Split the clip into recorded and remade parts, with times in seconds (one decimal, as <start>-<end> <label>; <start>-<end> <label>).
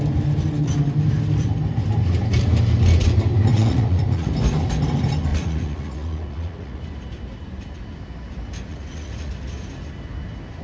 0.0-3.5 recorded; 3.5-4.3 remade; 4.3-5.3 recorded; 5.3-6.8 remade; 6.8-8.7 recorded; 8.7-9.3 remade; 9.3-10.6 recorded